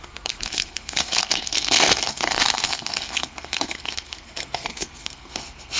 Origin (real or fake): fake